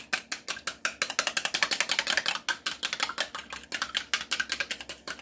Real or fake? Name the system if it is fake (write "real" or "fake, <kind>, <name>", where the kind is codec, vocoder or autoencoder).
real